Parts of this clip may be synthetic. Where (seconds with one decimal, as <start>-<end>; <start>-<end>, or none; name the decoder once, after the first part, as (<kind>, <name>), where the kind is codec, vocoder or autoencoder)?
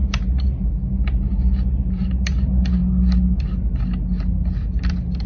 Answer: none